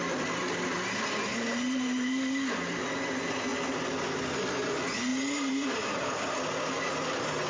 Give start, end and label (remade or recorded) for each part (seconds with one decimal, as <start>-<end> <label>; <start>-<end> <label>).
0.0-5.1 recorded; 5.1-6.2 remade; 6.2-7.5 recorded